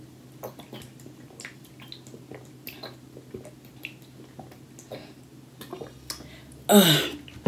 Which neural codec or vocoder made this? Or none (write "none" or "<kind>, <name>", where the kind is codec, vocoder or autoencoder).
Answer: none